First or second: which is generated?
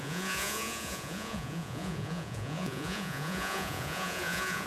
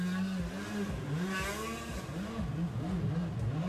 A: first